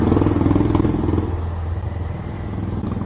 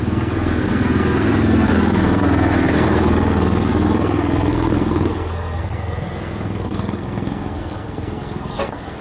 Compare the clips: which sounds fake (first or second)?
second